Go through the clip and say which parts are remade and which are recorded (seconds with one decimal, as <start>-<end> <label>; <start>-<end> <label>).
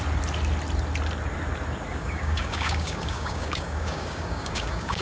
0.0-1.9 recorded; 1.9-5.0 remade